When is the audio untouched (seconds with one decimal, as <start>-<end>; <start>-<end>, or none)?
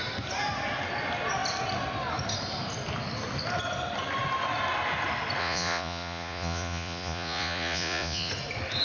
0.0-5.4; 8.3-8.8